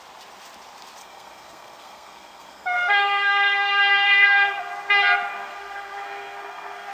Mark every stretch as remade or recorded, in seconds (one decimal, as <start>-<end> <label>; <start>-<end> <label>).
0.0-1.0 recorded; 1.0-4.7 remade; 4.7-5.3 recorded; 5.3-6.9 remade